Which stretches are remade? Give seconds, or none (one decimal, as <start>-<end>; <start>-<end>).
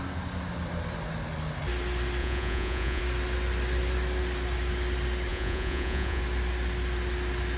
2.2-3.0; 5.3-6.2